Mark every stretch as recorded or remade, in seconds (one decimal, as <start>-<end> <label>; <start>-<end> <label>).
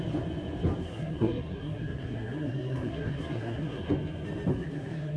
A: 0.0-0.8 recorded; 0.8-3.9 remade; 3.9-4.5 recorded; 4.5-5.2 remade